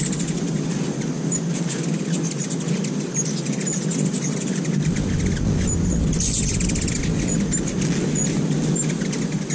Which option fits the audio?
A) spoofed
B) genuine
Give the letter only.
B